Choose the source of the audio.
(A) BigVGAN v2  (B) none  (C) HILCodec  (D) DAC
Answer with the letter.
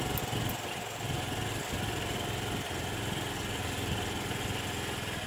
B